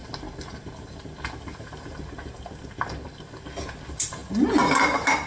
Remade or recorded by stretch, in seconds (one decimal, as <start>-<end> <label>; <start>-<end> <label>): 0.0-5.3 recorded